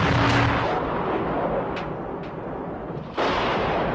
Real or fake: real